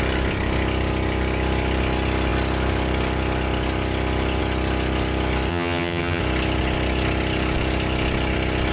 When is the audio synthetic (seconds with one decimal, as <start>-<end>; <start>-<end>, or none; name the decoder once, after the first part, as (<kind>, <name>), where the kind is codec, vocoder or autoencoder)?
5.5-6.2 (vocoder, HiFi-GAN)